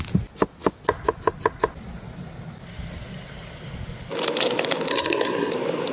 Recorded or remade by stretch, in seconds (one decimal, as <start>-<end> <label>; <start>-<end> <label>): 0.0-4.9 recorded; 4.9-5.5 remade; 5.5-5.9 recorded